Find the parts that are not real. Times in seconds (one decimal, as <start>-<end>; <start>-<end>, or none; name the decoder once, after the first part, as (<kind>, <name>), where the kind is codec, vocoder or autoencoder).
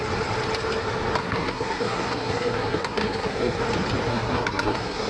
1.2-3.6 (codec, SNAC); 4.1-5.1